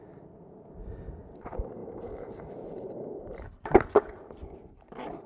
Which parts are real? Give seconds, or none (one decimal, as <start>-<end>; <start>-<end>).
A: 0.0-1.8; 4.8-5.3